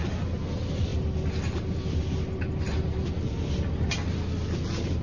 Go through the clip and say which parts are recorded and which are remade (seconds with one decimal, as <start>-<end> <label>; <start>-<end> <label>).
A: 0.0-5.0 recorded